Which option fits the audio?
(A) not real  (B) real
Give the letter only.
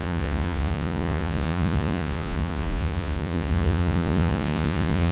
A